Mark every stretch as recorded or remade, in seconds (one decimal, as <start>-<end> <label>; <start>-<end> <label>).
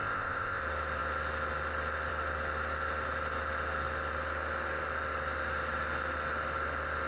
0.0-0.6 remade; 0.6-7.1 recorded